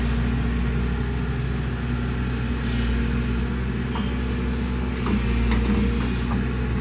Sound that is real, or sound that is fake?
real